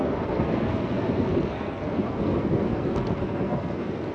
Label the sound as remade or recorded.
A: remade